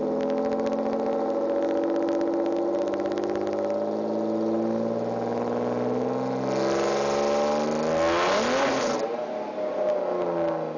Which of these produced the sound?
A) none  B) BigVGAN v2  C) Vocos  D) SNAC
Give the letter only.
A